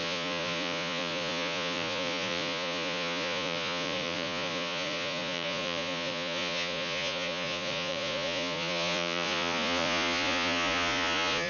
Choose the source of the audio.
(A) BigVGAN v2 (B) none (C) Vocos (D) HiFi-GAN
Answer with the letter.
C